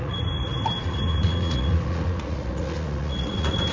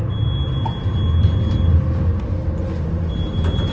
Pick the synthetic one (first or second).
first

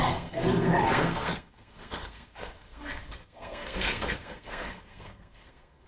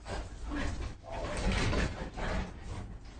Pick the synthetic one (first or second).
first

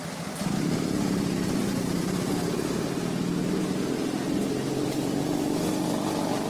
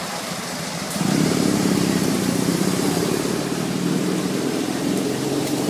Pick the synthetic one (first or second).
second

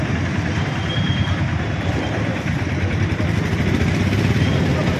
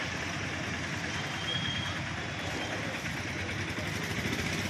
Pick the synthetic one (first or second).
first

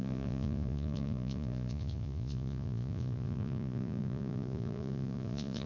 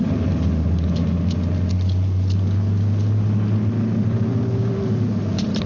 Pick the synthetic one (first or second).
first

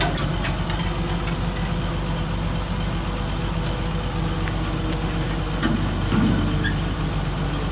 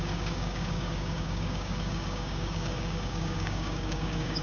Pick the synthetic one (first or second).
second